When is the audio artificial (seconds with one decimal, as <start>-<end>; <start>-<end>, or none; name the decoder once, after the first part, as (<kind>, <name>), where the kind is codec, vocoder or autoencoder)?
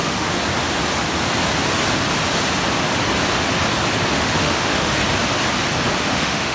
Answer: 0.0-0.4 (autoencoder, DAC-VAE); 4.1-5.0; 6.0-6.5